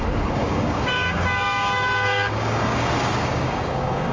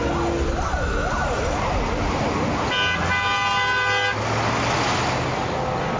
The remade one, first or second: first